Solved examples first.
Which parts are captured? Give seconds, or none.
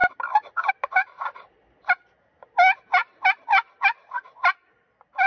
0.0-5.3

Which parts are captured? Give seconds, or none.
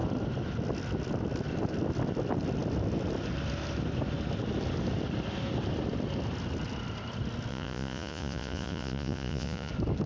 0.0-7.5; 9.7-10.1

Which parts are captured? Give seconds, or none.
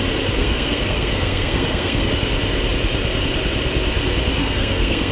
0.0-0.4; 2.1-4.4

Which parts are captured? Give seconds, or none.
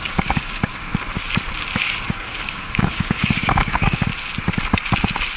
0.9-2.1; 4.1-5.4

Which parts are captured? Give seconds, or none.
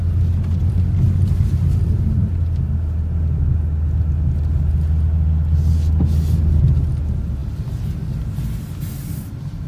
0.0-9.7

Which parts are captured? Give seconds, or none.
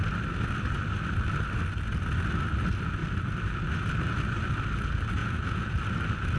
0.0-5.2; 5.7-6.4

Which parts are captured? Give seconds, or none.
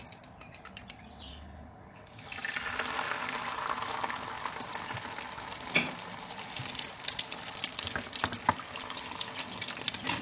0.0-1.3; 2.3-10.2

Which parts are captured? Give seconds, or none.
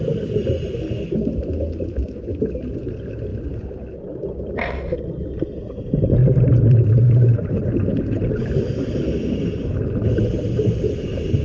0.0-11.4